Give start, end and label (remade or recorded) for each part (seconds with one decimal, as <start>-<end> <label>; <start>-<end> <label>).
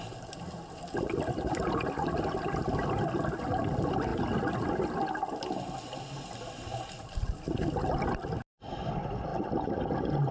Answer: 0.0-10.3 recorded